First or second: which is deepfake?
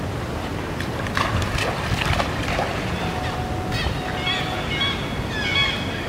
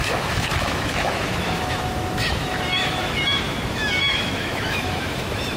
second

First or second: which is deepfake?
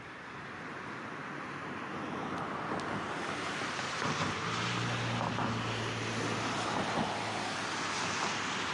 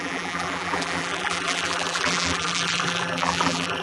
second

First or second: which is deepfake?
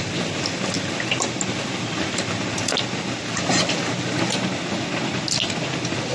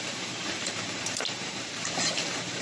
second